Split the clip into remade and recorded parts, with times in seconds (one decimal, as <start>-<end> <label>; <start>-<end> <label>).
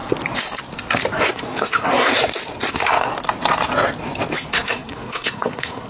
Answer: 0.0-1.3 recorded; 1.3-2.1 remade; 2.1-2.7 recorded; 2.7-3.1 remade; 3.1-4.5 recorded; 4.5-5.9 remade